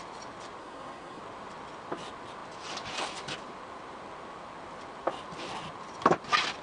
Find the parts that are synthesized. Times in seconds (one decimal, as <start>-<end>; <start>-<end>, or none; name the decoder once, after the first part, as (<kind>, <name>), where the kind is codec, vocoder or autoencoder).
0.6-1.2 (codec, SNAC)